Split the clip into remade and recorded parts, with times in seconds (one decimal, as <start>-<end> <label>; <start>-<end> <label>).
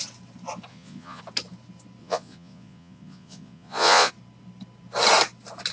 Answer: 0.0-0.7 recorded; 0.7-1.2 remade; 1.2-2.0 recorded; 2.0-4.1 remade; 4.1-5.7 recorded